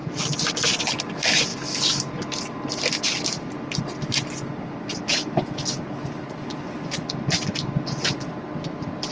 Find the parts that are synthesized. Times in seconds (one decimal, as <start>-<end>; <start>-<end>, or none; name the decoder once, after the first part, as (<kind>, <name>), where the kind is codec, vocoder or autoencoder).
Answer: none